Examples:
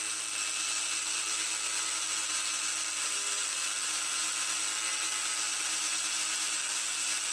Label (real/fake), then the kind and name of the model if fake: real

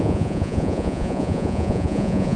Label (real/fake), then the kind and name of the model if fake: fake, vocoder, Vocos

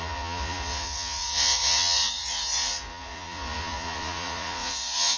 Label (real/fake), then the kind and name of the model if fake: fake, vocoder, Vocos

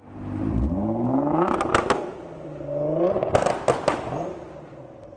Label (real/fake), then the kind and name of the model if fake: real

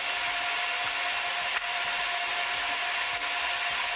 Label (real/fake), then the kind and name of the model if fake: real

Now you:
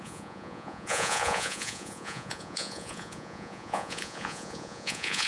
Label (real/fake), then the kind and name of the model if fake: fake, vocoder, Vocos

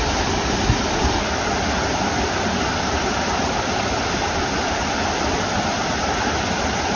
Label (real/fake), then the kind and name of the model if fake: real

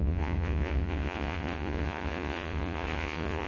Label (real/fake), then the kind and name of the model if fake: fake, vocoder, Vocos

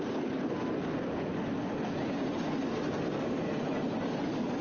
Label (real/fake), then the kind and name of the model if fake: real